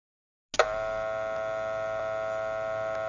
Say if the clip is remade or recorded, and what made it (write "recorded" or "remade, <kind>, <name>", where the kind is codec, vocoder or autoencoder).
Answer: recorded